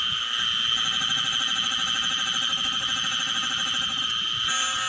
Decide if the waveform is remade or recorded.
recorded